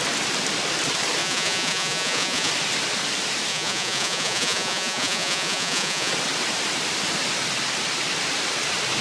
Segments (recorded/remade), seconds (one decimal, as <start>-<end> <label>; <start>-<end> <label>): 0.0-1.2 recorded; 1.2-2.5 remade; 2.5-3.5 recorded; 3.5-6.1 remade; 6.1-9.0 recorded